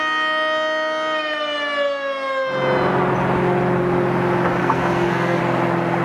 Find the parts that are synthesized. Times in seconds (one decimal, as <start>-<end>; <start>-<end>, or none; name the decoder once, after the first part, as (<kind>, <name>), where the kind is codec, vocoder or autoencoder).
4.6-5.4 (codec, SNAC)